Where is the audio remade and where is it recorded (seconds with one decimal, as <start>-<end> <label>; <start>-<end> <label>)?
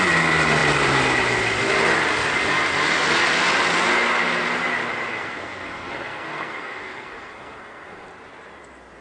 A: 0.0-5.1 recorded; 5.1-8.1 remade; 8.1-9.0 recorded